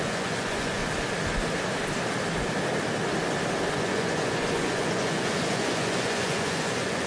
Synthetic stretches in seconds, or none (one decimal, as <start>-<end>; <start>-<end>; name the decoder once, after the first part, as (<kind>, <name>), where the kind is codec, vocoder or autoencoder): 0.0-0.8 (vocoder, Vocos); 3.7-7.1

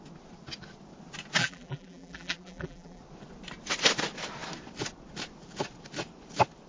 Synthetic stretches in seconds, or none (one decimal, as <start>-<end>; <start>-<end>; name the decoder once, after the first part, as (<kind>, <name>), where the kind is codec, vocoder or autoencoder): 1.4-3.0 (vocoder, BigVGAN v2)

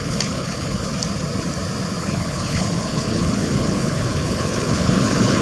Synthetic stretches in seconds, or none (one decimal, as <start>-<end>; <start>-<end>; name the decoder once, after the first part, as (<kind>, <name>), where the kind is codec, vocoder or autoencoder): 0.0-0.9 (codec, HILCodec); 2.0-5.4

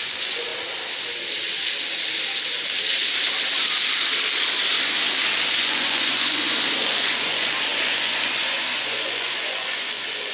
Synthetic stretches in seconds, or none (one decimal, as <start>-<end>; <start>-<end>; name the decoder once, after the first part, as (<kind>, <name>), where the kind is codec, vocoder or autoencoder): 0.0-0.5 (vocoder, Vocos); 5.6-10.3